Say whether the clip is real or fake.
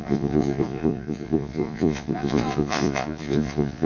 fake